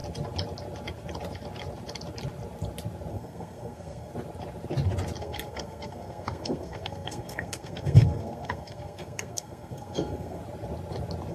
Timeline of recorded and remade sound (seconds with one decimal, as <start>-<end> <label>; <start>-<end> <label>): 0.0-3.1 recorded; 3.1-4.1 remade; 4.1-5.2 recorded; 5.2-10.4 remade; 10.4-11.3 recorded